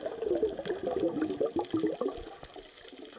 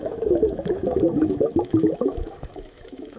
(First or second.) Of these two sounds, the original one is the first